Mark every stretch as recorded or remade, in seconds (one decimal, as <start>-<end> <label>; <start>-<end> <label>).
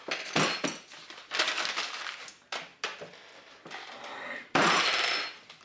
0.0-5.6 recorded